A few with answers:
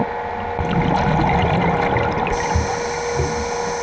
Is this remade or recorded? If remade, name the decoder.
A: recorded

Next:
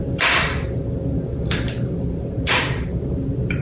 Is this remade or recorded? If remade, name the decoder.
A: remade, vocoder, BigVGAN v2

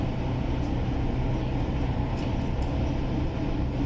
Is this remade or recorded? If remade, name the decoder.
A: recorded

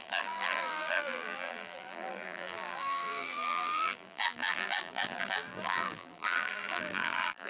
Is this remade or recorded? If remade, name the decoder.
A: remade, vocoder, BigVGAN v2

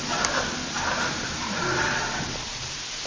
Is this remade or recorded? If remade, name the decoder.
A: remade, vocoder, BigVGAN v2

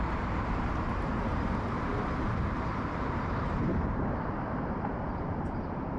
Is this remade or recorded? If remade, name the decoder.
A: remade, vocoder, BigVGAN v2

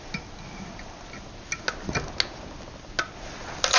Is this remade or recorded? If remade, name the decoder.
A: recorded